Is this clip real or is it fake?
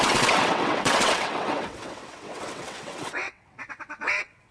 fake